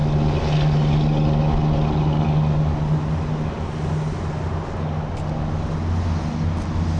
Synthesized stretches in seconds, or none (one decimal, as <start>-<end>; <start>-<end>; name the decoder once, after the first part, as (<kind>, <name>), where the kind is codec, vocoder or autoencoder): none